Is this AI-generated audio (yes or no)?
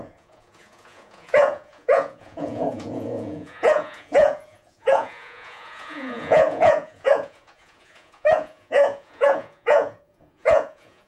yes